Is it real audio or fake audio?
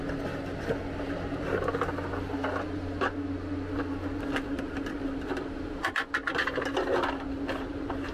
real